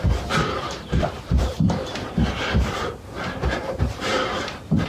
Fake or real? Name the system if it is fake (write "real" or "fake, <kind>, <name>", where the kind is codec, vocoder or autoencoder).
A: fake, vocoder, BigVGAN v2